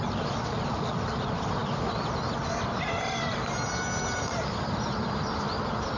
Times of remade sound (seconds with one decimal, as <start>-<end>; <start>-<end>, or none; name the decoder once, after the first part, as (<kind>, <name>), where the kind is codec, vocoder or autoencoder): none